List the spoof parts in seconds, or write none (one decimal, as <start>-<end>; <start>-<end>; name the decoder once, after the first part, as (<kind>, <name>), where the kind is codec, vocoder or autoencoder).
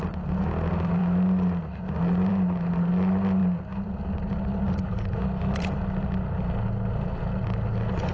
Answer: none